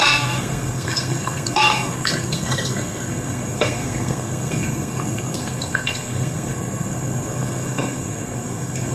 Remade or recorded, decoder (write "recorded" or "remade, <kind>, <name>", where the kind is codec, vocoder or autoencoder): remade, codec, SNAC